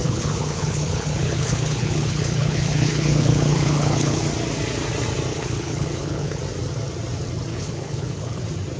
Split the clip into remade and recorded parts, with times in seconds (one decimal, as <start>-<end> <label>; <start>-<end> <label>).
0.0-4.2 remade; 4.2-5.3 recorded; 5.3-6.4 remade; 6.4-7.5 recorded; 7.5-8.4 remade; 8.4-8.8 recorded